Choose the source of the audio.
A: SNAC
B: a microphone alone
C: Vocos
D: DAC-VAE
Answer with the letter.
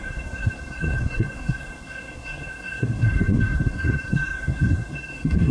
A